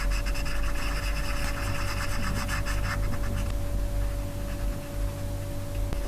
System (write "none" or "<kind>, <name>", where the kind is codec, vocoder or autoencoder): none